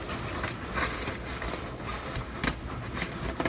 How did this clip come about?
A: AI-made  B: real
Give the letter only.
B